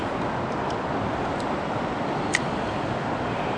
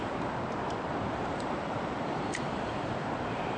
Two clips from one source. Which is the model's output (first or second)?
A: second